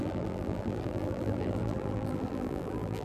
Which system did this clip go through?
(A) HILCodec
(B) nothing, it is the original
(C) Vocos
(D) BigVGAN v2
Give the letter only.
D